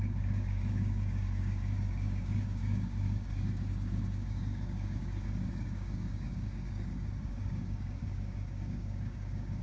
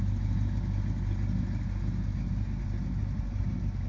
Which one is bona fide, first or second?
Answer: second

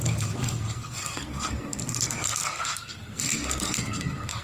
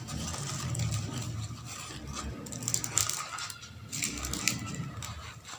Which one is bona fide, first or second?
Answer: second